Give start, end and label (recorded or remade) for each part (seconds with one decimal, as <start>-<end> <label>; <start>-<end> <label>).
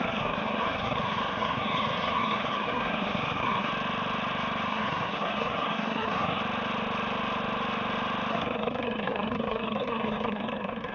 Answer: 0.0-3.7 remade; 3.7-4.7 recorded; 4.7-6.4 remade; 6.4-8.3 recorded; 8.3-10.9 remade